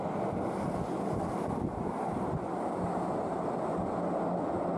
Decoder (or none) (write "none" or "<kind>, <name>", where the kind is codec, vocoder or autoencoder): none